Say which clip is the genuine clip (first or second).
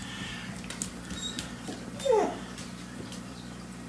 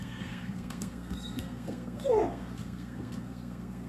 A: first